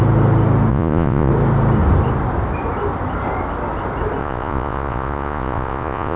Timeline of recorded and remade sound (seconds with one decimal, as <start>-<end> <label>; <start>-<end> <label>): 0.0-0.7 recorded; 0.7-1.3 remade; 1.3-4.2 recorded; 4.2-6.2 remade